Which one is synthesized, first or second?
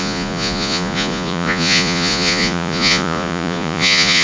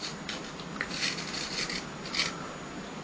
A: first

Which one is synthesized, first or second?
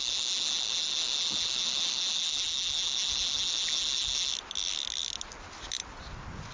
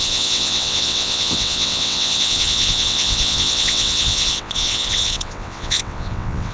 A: second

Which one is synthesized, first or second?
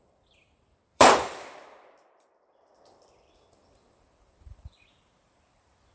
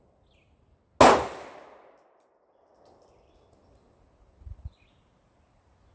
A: first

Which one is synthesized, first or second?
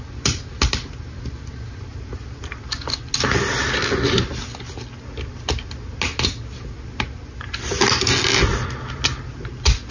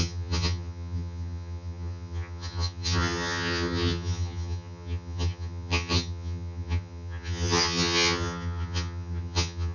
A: second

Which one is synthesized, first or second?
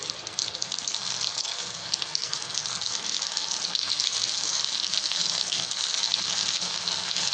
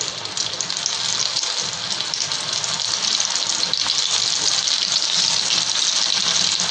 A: first